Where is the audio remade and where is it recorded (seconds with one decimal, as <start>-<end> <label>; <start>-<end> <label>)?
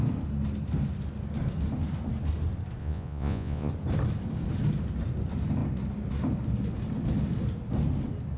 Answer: 0.0-2.8 recorded; 2.8-3.7 remade; 3.7-8.4 recorded